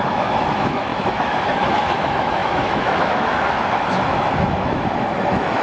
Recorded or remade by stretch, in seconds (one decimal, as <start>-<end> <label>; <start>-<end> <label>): 0.0-5.6 remade